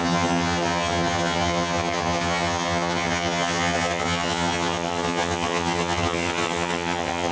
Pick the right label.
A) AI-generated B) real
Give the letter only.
A